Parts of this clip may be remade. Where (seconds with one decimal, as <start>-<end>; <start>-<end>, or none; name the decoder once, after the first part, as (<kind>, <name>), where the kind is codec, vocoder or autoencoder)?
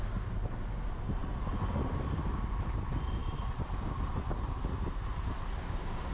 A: none